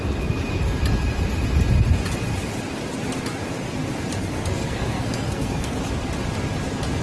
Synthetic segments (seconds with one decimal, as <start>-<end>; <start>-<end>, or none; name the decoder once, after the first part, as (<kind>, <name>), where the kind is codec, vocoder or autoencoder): 4.2-5.8 (codec, SNAC)